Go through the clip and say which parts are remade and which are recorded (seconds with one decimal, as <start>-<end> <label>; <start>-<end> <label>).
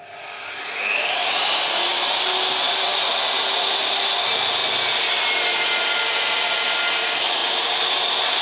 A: 0.0-8.4 recorded